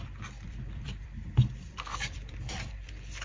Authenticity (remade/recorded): remade